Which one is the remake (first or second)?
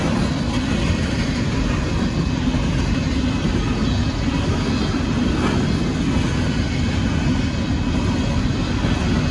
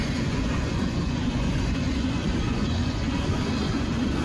second